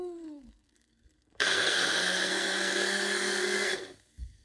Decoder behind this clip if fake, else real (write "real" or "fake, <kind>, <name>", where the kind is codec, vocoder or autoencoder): fake, codec, SNAC